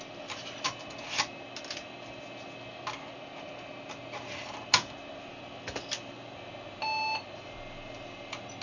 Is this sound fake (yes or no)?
no